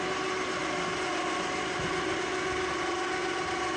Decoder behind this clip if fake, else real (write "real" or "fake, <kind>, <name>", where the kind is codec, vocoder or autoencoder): real